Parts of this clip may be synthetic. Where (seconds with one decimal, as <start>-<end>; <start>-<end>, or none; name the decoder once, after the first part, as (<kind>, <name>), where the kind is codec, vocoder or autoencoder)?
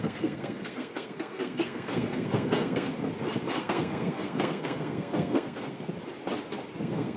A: 0.0-2.9 (codec, SNAC); 3.6-5.9; 6.8-7.2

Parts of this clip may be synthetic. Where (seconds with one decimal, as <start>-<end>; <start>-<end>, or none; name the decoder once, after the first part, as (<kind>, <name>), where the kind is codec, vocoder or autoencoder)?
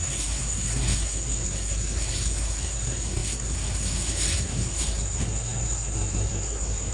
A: 0.0-6.9 (codec, SNAC)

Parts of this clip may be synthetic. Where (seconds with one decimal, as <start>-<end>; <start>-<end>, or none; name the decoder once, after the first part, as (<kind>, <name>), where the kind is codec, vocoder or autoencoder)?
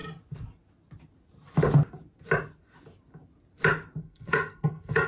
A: 4.0-5.1 (codec, SNAC)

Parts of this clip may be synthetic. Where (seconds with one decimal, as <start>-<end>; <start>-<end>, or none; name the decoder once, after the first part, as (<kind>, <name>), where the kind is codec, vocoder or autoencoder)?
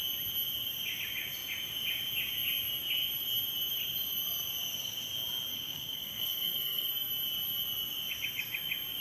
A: 5.5-6.9 (codec, SNAC)